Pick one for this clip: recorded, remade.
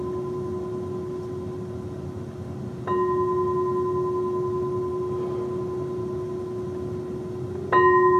recorded